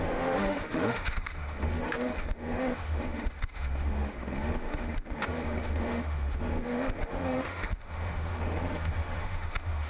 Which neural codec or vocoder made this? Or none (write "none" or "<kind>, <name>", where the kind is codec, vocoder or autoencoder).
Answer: autoencoder, DAC-VAE